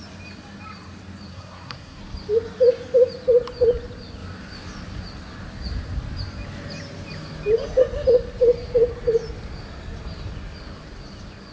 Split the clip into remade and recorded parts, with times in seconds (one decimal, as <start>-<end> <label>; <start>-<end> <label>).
0.0-1.3 recorded; 1.3-2.0 remade; 2.0-11.5 recorded